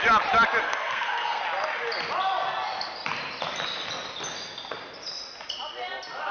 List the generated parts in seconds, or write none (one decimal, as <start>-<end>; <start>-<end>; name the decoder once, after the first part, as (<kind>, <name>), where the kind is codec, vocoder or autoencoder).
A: 0.6-1.4 (codec, SNAC)